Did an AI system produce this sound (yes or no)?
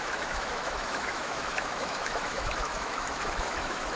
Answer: yes